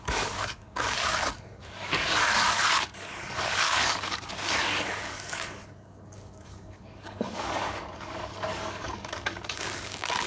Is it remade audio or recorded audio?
remade